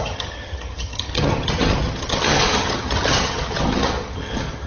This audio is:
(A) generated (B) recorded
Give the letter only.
A